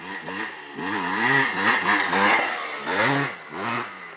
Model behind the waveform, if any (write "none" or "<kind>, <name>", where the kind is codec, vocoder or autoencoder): none